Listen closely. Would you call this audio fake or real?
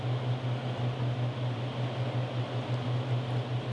fake